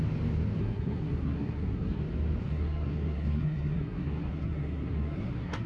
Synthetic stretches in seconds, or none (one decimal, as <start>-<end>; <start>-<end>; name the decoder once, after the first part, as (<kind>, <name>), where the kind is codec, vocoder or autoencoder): 0.6-2.0 (codec, SNAC); 2.4-5.7